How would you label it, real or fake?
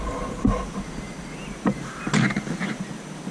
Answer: real